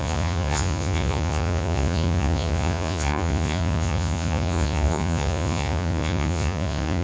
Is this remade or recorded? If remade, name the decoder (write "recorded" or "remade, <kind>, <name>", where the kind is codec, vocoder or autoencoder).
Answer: remade, vocoder, Vocos